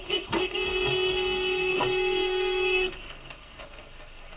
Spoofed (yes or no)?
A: yes